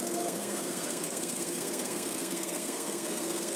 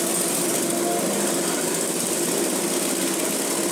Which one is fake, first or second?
first